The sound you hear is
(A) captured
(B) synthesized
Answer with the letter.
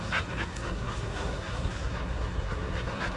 B